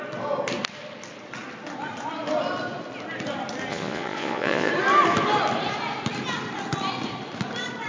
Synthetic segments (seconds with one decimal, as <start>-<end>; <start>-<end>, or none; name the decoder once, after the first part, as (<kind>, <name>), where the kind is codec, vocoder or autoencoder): 3.7-4.7 (vocoder, Vocos)